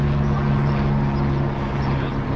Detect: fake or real real